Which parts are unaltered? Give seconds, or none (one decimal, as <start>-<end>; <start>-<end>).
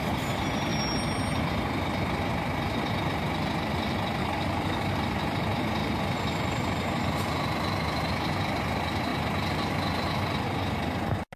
0.0-4.2; 4.9-11.4